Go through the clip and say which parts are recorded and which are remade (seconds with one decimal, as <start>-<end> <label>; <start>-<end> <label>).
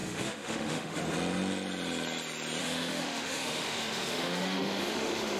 0.0-1.0 remade; 1.0-2.6 recorded; 2.6-5.4 remade